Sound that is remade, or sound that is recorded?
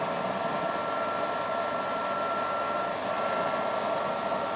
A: recorded